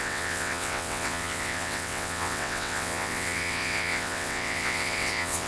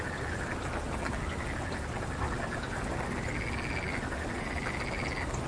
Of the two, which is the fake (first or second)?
first